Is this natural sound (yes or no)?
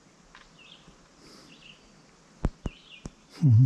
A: yes